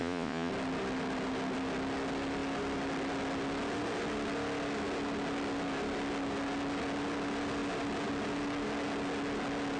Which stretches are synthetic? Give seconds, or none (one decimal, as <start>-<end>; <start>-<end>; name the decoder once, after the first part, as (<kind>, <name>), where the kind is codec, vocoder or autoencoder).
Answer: 0.0-0.5 (vocoder, Vocos)